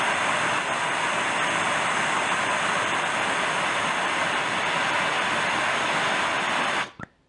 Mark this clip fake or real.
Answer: real